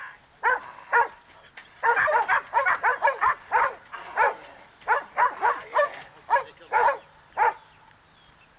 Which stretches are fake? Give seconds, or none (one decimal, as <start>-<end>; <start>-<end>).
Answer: none